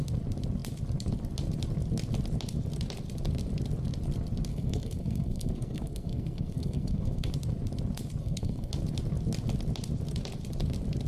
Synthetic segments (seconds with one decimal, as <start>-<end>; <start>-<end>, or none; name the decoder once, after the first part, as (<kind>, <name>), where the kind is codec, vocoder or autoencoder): 4.5-7.3 (codec, SNAC); 8.2-8.7